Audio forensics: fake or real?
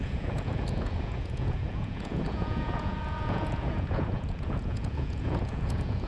fake